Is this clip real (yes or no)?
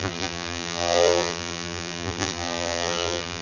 no